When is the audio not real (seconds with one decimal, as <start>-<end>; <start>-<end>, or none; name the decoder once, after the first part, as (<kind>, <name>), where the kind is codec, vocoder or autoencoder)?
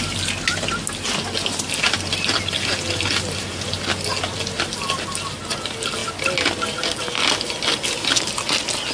none